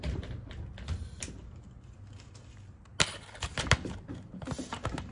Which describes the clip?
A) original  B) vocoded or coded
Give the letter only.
A